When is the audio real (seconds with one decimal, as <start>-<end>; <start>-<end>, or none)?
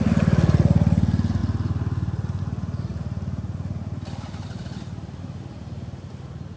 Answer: 0.0-6.6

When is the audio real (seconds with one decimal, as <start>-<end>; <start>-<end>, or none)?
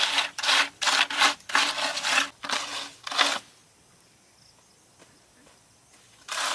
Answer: 0.0-6.5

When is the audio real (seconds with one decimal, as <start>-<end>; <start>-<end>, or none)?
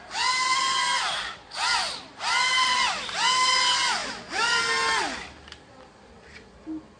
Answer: 0.0-4.0; 4.6-7.0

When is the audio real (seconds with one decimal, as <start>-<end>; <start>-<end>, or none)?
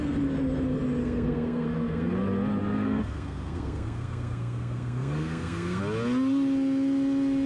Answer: 0.0-1.0; 2.1-2.6; 5.8-7.5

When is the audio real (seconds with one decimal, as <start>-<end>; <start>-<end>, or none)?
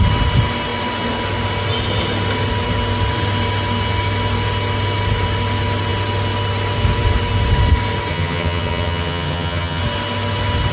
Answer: 0.0-8.1; 9.8-10.7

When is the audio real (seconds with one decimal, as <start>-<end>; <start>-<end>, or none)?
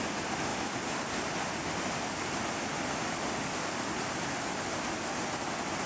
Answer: 0.0-5.9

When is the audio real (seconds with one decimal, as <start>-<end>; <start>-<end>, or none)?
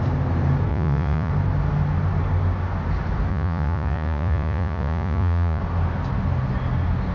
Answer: 0.0-0.7; 1.3-3.3; 5.6-7.1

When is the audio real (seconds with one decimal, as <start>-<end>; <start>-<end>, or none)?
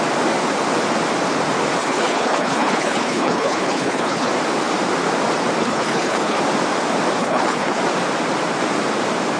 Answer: 0.0-1.8; 4.3-5.6; 6.4-7.2; 7.8-9.4